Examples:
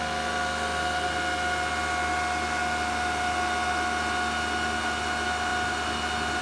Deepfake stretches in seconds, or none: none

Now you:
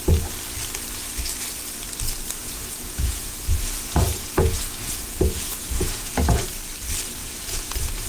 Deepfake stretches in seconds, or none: 2.4-6.4 (vocoder, Vocos); 7.2-8.1

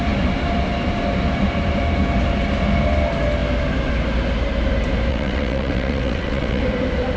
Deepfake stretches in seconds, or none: 5.1-6.6 (vocoder, WaveNeXt)